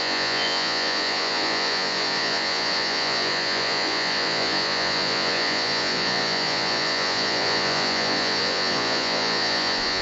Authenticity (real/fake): fake